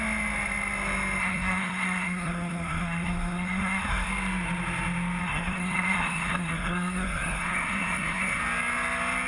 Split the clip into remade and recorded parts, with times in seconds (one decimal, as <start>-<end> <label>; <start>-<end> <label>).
0.0-1.2 recorded; 1.2-4.1 remade; 4.1-5.2 recorded; 5.2-8.4 remade; 8.4-9.3 recorded